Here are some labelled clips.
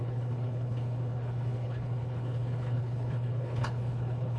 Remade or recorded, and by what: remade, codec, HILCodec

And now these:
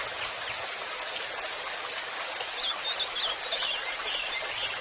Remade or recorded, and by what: recorded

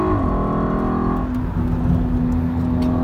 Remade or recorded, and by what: recorded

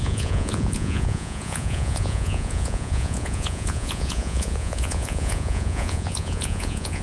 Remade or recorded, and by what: remade, vocoder, Vocos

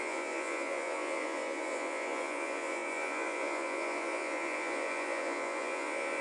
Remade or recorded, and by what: remade, vocoder, Vocos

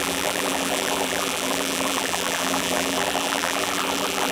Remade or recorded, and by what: remade, vocoder, BigVGAN v2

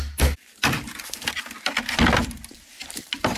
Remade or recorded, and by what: recorded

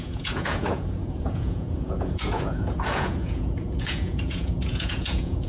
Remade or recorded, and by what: remade, vocoder, Vocos